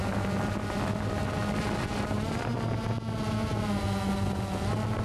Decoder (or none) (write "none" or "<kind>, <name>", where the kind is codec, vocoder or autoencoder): none